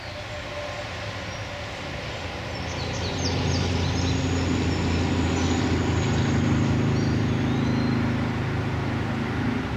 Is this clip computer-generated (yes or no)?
no